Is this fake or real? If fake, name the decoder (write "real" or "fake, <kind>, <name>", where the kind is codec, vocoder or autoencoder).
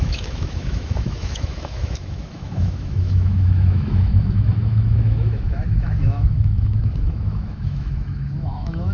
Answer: fake, autoencoder, DAC-VAE